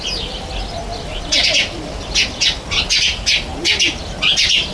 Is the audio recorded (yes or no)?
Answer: yes